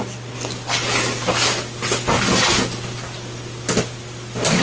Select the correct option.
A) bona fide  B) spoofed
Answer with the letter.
A